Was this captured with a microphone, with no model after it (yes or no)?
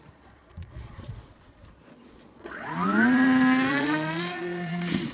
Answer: no